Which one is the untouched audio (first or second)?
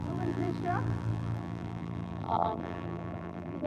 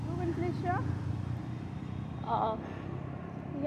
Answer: second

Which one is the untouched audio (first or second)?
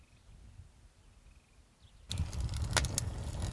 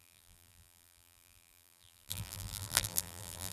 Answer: first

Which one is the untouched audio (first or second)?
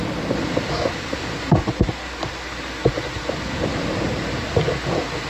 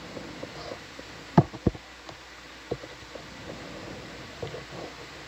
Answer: second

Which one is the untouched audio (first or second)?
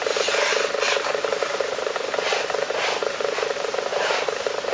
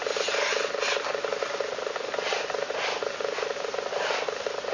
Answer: second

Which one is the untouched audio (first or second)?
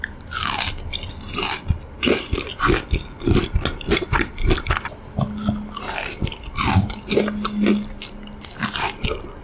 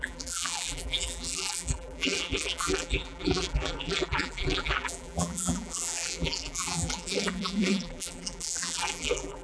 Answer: first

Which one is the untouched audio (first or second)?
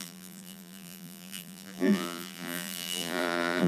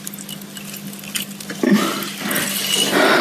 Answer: second